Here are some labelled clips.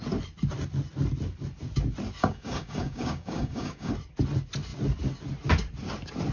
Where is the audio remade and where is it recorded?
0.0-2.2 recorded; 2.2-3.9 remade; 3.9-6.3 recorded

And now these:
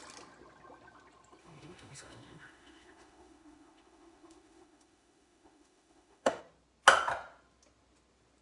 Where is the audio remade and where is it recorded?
0.0-1.4 recorded; 1.4-6.4 remade; 6.4-8.4 recorded

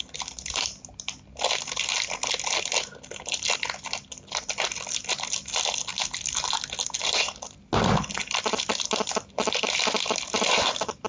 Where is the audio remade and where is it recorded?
0.0-11.1 recorded

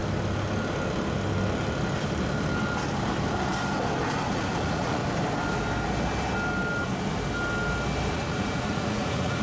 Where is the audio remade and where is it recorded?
0.0-4.3 recorded; 4.3-5.0 remade; 5.0-8.1 recorded; 8.1-9.4 remade

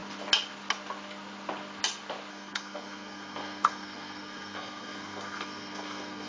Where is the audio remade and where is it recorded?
0.0-2.3 recorded; 2.3-6.3 remade

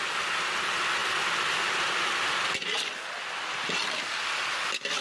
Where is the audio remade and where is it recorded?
0.0-5.0 recorded

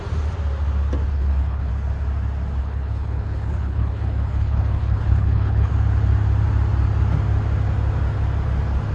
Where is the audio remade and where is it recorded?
0.0-1.1 recorded; 1.1-1.7 remade; 1.7-2.6 recorded; 2.6-5.7 remade; 5.7-8.9 recorded

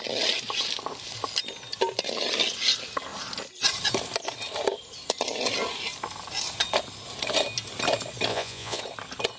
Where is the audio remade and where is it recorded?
0.0-8.3 recorded; 8.3-8.8 remade; 8.8-9.4 recorded